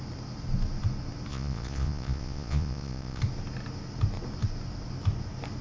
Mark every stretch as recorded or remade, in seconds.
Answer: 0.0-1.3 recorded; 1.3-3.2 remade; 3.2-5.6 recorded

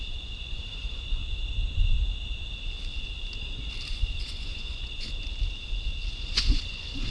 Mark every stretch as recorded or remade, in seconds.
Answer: 0.0-1.2 remade; 1.2-3.9 recorded; 3.9-5.2 remade; 5.2-6.1 recorded; 6.1-7.1 remade